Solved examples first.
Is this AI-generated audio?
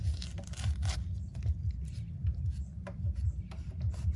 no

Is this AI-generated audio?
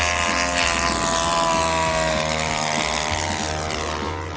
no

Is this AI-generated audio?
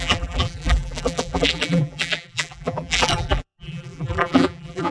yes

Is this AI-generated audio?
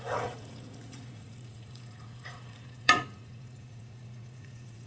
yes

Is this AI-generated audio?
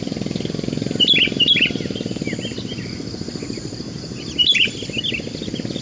no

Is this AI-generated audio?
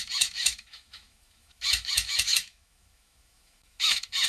yes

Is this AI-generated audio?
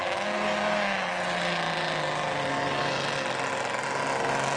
no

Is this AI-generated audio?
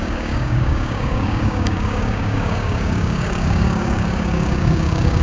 yes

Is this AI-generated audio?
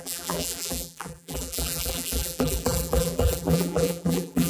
yes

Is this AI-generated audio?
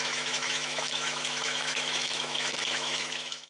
yes